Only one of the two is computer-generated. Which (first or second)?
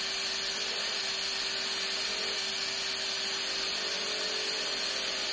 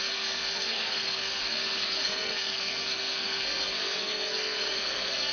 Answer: second